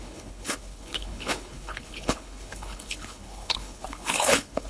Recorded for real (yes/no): no